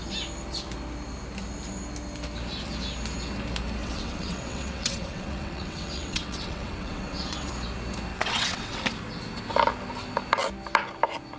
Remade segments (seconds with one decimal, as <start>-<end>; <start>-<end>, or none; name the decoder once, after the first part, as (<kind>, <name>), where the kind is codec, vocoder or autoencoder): 3.8-7.5 (vocoder, WaveNeXt); 8.1-8.8